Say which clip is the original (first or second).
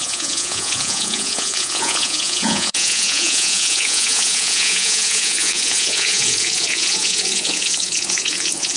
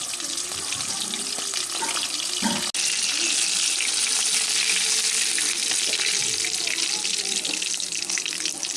second